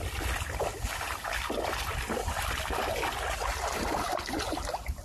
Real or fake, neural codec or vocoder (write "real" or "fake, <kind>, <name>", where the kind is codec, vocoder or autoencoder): real